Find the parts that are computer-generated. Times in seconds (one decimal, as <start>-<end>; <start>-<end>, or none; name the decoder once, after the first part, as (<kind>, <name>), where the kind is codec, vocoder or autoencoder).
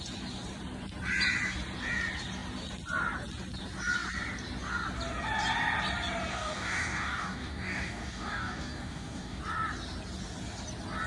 6.3-9.4 (codec, DAC)